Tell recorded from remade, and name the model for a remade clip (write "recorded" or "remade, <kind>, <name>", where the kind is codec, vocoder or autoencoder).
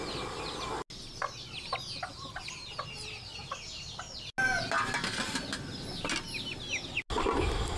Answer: recorded